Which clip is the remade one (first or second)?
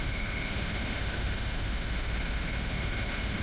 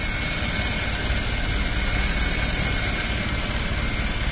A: first